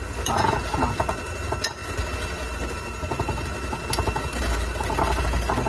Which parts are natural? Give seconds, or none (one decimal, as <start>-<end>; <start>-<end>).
0.0-5.7